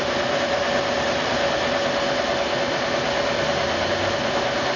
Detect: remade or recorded recorded